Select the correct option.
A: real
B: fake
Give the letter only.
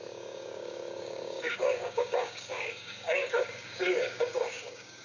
B